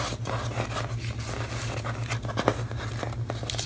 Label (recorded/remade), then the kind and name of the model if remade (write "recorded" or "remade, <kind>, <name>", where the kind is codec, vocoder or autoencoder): recorded